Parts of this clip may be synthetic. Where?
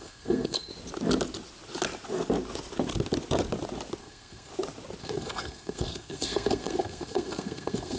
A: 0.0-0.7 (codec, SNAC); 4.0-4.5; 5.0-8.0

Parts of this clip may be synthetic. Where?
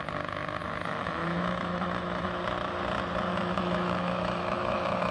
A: 0.6-2.3 (autoencoder, DAC-VAE); 3.3-5.1